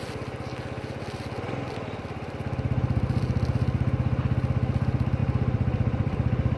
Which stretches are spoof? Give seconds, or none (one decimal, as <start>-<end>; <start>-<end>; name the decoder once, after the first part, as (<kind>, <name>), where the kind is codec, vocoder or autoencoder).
5.2-6.6 (vocoder, BigVGAN v2)